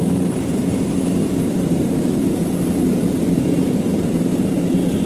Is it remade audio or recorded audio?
remade